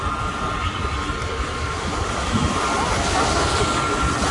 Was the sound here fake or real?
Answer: real